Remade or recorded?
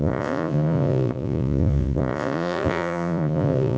remade